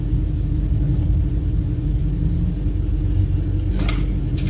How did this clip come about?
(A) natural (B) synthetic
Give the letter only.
A